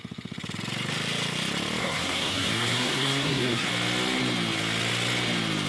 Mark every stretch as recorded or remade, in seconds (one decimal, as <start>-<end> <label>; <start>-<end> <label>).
0.0-1.8 recorded; 1.8-3.7 remade; 3.7-5.7 recorded